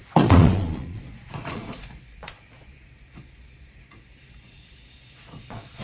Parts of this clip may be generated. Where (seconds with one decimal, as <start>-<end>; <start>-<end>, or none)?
0.0-5.8